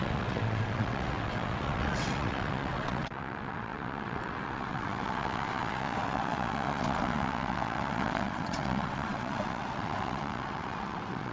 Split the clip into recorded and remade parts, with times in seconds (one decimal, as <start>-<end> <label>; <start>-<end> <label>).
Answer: 0.0-11.3 remade